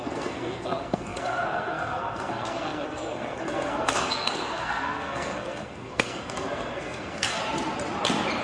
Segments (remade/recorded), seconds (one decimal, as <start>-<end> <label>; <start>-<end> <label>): 0.0-7.4 remade; 7.4-8.4 recorded